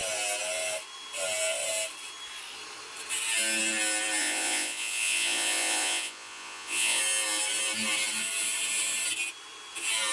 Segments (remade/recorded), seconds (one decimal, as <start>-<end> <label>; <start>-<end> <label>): 0.0-4.2 recorded; 4.2-7.0 remade; 7.0-10.1 recorded